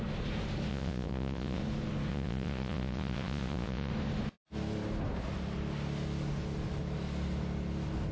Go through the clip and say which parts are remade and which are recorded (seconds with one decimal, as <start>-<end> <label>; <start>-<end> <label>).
0.0-0.7 recorded; 0.7-1.6 remade; 1.6-2.1 recorded; 2.1-3.9 remade; 3.9-8.1 recorded